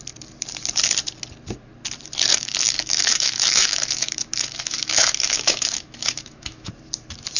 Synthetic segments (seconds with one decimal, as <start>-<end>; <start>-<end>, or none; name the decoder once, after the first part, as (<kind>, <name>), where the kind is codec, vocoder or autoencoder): 2.3-6.7 (autoencoder, DAC-VAE)